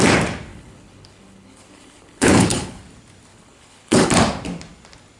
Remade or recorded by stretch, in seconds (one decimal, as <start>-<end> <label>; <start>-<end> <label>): 0.0-0.5 recorded; 0.5-2.8 remade; 2.8-3.3 recorded; 3.3-4.1 remade; 4.1-5.2 recorded